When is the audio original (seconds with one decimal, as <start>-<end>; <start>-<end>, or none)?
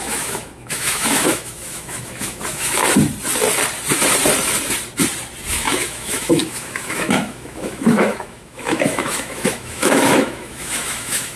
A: 2.8-5.5